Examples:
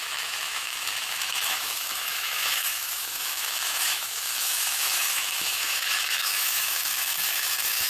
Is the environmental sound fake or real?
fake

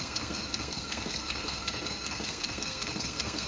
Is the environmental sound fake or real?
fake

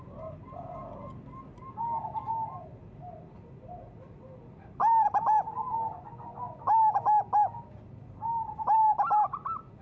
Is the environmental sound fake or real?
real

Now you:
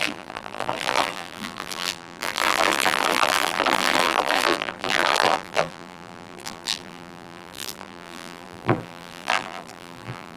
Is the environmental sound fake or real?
fake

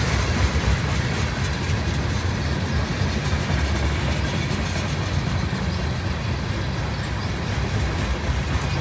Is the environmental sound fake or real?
real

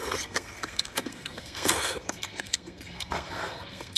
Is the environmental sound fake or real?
fake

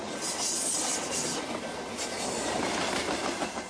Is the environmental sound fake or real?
real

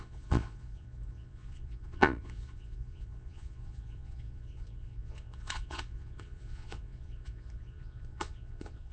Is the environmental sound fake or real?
fake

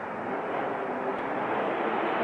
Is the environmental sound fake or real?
real